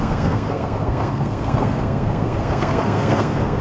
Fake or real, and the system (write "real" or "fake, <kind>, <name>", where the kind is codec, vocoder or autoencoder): fake, codec, SNAC